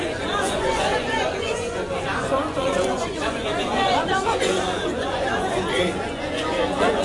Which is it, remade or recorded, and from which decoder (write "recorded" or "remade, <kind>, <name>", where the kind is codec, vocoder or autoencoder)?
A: remade, vocoder, Vocos